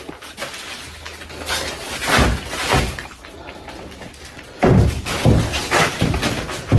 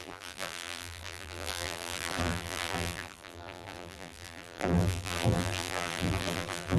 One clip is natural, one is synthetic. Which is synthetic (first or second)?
second